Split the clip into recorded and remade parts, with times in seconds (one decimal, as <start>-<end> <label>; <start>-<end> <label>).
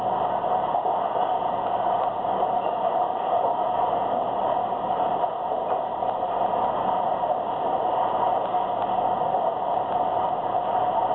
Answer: 0.0-11.1 recorded